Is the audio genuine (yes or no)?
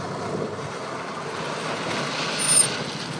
yes